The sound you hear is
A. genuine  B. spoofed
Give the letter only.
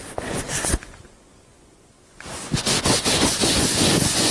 B